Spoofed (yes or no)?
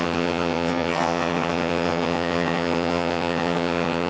yes